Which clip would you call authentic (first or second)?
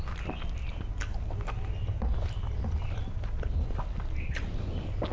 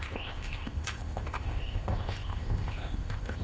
first